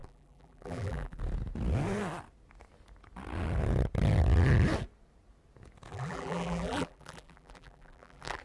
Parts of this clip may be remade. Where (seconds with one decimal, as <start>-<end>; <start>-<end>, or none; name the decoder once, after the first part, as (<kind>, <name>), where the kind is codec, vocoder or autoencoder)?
0.0-1.2 (vocoder, BigVGAN v2); 5.9-8.4